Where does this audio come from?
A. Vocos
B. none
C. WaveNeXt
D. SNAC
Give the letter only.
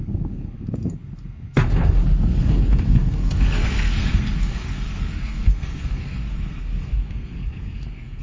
D